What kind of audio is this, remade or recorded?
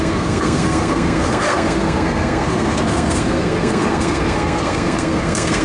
remade